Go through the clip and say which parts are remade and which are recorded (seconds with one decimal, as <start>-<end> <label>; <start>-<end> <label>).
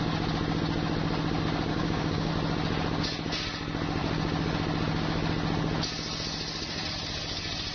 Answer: 0.0-1.7 recorded; 1.7-2.3 remade; 2.3-7.7 recorded